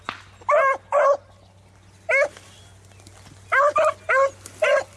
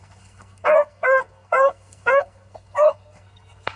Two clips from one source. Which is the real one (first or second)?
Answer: first